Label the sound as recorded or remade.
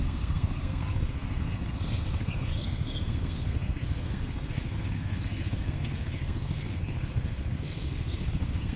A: remade